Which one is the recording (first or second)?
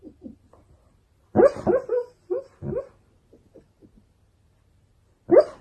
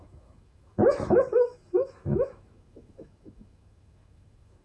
first